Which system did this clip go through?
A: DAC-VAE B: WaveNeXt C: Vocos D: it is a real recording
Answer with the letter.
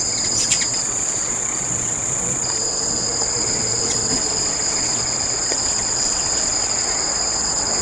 B